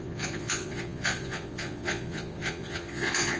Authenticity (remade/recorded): remade